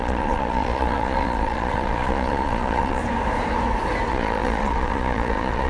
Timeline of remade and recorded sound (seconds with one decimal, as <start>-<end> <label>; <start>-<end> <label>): 0.0-3.0 remade; 3.0-4.1 recorded; 4.1-5.7 remade